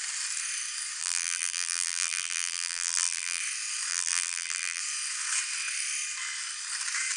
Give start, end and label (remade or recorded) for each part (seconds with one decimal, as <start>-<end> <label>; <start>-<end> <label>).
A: 0.0-1.0 recorded; 1.0-3.4 remade; 3.4-3.9 recorded; 3.9-4.8 remade; 4.8-7.2 recorded

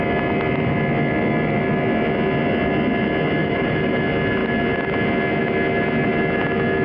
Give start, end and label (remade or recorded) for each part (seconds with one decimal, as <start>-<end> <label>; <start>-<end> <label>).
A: 0.0-3.4 recorded; 3.4-4.0 remade; 4.0-6.8 recorded

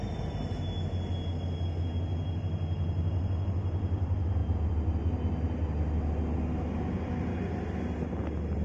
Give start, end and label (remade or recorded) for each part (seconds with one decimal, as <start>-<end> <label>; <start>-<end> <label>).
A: 0.0-8.6 recorded

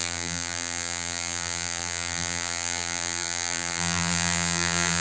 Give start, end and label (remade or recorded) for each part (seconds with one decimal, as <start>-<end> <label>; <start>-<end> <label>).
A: 0.0-5.0 remade

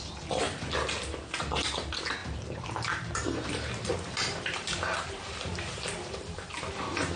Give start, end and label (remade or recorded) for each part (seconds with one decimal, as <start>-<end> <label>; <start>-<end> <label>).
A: 0.0-2.2 recorded; 2.2-6.5 remade; 6.5-7.2 recorded

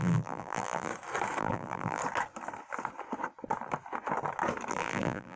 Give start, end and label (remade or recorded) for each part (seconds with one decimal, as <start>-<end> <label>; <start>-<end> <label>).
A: 0.0-0.9 remade; 0.9-1.4 recorded; 1.4-2.0 remade; 2.0-4.7 recorded; 4.7-5.4 remade